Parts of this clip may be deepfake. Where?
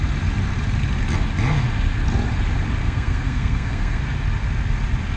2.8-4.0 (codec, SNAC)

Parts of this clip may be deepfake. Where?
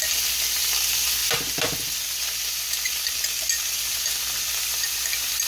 none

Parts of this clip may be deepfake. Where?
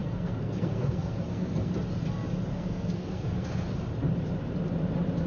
0.0-1.7 (codec, SNAC); 2.5-3.5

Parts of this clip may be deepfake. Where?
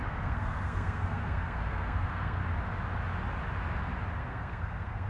0.0-2.4 (codec, SNAC); 4.2-5.1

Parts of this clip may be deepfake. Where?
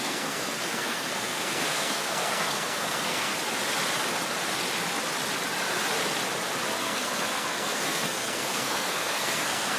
0.0-3.3 (codec, SNAC); 6.8-9.8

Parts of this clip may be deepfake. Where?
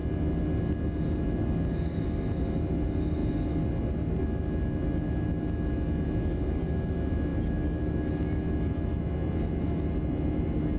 none